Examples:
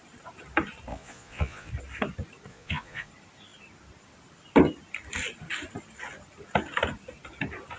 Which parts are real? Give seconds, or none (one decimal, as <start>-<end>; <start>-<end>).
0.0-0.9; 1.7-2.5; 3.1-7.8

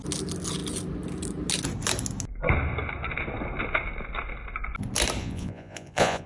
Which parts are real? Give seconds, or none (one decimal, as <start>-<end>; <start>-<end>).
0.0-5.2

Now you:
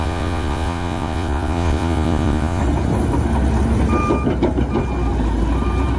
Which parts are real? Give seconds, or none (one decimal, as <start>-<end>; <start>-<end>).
2.6-6.0